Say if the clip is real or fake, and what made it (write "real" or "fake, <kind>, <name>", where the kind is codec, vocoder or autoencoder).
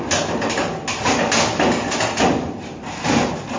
real